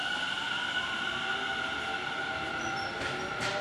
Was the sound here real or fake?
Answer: real